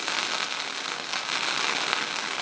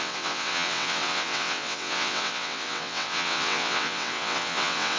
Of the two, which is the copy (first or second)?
second